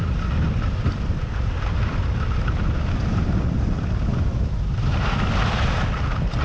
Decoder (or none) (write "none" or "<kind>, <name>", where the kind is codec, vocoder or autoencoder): vocoder, BigVGAN v2